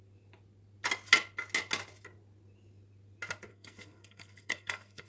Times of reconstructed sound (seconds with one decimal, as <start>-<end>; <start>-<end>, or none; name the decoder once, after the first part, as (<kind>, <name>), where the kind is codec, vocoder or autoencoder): 3.5-5.1 (codec, SNAC)